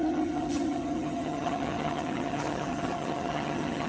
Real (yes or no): no